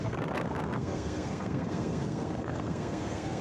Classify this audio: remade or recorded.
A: remade